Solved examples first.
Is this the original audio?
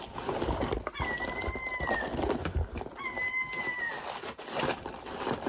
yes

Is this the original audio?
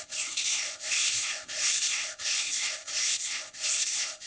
no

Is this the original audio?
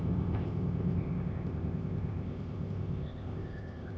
no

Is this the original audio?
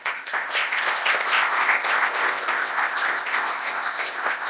no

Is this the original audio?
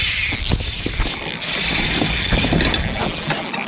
yes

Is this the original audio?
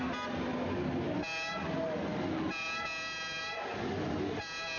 yes